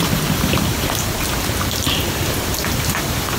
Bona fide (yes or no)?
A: no